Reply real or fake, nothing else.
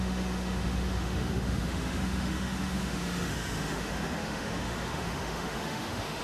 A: fake